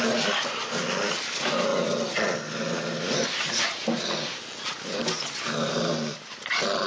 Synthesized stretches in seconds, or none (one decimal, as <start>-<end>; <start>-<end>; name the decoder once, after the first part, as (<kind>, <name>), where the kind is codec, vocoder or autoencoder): none